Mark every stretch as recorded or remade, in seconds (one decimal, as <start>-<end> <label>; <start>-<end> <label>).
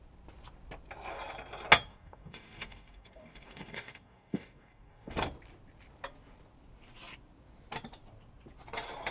0.0-1.9 recorded; 1.9-5.1 remade; 5.1-9.1 recorded